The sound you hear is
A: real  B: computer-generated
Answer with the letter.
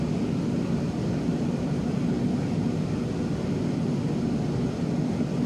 A